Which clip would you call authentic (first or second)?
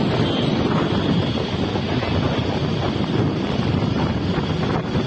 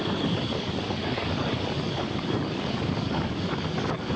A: first